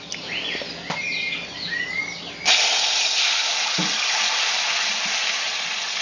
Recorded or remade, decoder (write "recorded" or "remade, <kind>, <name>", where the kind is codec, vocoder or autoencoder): recorded